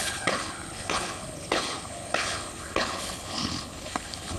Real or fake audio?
fake